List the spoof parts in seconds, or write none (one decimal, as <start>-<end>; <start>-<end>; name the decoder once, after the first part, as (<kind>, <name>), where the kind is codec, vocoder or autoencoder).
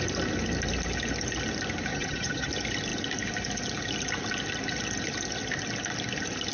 1.9-2.5 (vocoder, HiFi-GAN)